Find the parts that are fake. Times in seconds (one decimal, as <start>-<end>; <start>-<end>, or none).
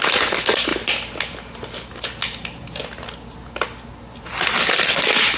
none